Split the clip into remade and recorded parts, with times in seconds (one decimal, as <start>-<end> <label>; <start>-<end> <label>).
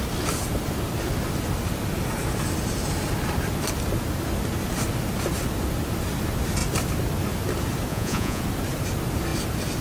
0.0-7.9 recorded; 7.9-8.4 remade; 8.4-9.8 recorded